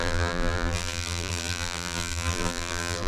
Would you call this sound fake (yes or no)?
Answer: yes